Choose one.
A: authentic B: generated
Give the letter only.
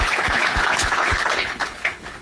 B